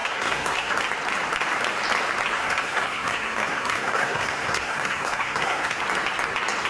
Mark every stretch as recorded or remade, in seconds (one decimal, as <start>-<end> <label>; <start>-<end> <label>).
0.0-0.7 remade; 0.7-2.4 recorded; 2.4-5.8 remade; 5.8-6.7 recorded